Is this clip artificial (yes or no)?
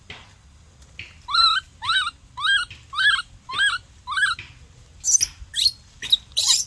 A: no